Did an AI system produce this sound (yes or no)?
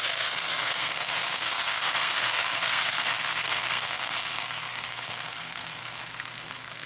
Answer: yes